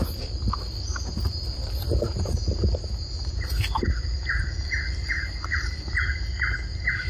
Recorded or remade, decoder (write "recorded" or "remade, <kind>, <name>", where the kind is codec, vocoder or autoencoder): recorded